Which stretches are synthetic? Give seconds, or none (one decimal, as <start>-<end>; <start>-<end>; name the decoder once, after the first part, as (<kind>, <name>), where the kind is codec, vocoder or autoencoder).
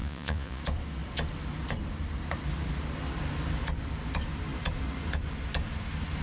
0.0-0.6 (vocoder, Vocos)